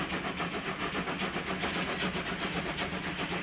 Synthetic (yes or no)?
no